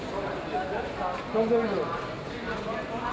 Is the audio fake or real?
real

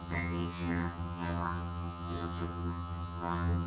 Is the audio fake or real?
fake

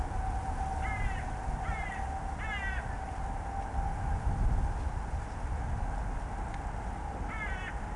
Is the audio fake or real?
real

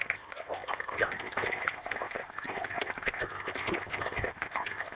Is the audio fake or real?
fake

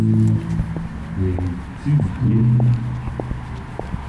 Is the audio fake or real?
real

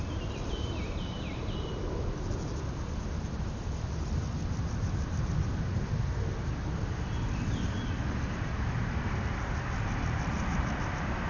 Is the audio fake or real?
real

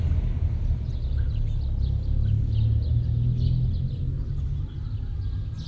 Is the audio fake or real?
real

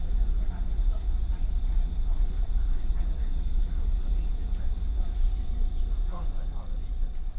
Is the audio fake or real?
fake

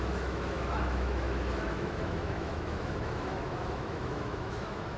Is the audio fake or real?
fake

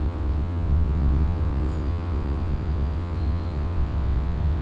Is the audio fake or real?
fake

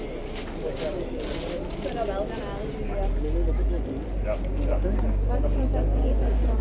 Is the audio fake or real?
real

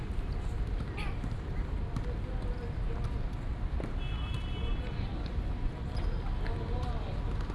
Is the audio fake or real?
real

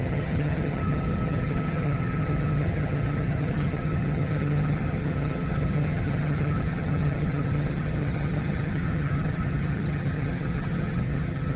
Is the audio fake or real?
fake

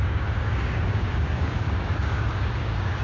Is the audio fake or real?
fake